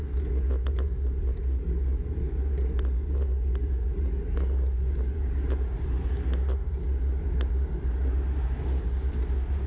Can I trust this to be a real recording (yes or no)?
yes